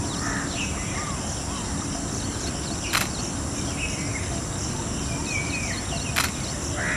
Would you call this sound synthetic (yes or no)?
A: no